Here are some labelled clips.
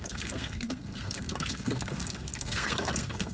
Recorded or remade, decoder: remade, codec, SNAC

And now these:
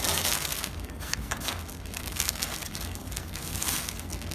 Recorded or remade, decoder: remade, codec, SNAC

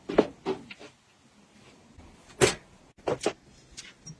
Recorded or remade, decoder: recorded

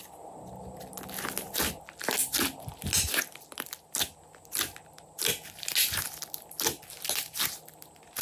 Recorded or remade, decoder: recorded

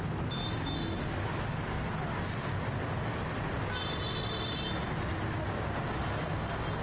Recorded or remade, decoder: recorded